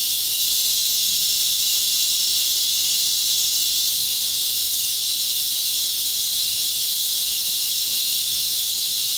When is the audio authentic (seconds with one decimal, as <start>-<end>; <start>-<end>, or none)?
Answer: none